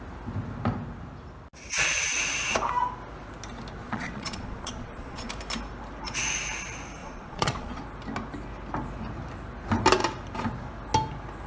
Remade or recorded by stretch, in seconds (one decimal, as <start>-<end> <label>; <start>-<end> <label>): 0.0-3.8 recorded; 3.8-5.3 remade; 5.3-7.0 recorded; 7.0-7.8 remade; 7.8-11.5 recorded